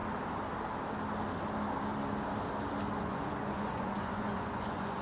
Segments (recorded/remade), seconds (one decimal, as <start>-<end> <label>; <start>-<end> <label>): 0.0-3.0 recorded; 3.0-5.0 remade